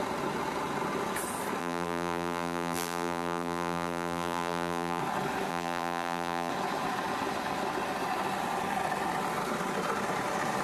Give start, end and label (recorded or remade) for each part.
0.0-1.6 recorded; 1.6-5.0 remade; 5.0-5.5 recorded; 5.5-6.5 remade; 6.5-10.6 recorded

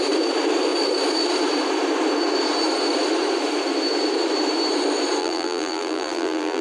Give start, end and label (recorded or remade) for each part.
0.0-5.2 recorded; 5.2-6.6 remade

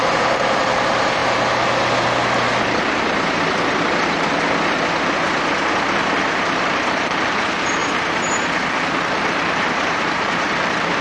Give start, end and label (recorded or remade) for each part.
0.0-1.2 remade; 1.2-6.2 recorded; 6.2-7.8 remade; 7.8-8.3 recorded; 8.3-11.0 remade